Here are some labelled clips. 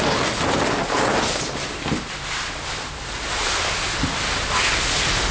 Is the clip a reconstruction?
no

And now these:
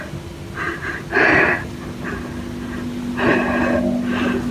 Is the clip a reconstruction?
no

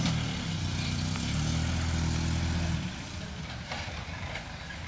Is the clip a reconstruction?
no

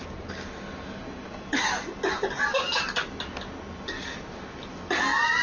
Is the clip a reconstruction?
no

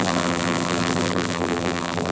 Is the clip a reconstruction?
yes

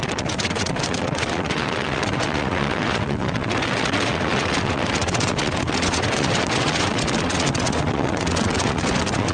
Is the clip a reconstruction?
yes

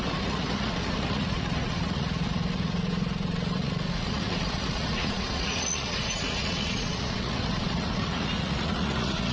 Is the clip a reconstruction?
yes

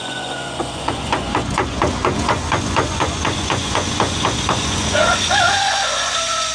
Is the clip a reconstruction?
yes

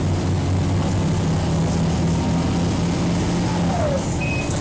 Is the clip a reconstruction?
no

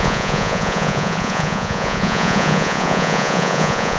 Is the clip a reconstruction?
yes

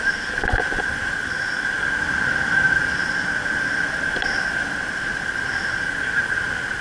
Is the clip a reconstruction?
no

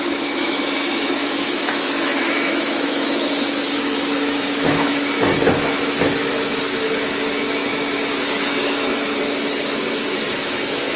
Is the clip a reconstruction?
yes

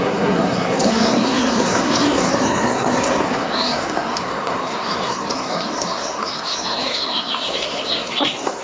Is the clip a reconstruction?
yes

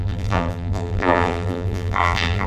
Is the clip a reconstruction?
yes